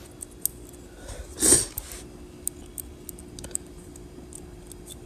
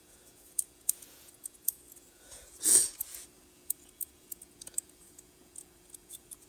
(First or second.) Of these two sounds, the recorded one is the first